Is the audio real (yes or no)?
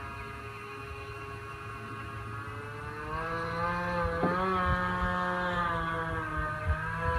yes